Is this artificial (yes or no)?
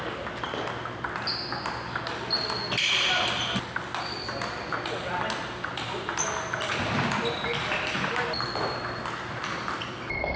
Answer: no